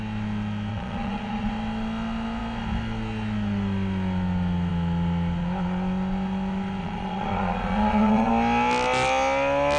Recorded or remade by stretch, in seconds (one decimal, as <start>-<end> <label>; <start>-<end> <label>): 0.0-0.7 recorded; 0.7-1.5 remade; 1.5-6.8 recorded; 6.8-8.3 remade; 8.3-9.8 recorded